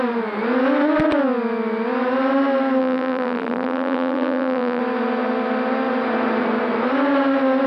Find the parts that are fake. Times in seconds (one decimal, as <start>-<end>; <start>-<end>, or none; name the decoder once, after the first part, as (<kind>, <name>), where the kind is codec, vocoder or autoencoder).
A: 2.8-4.8 (vocoder, BigVGAN v2)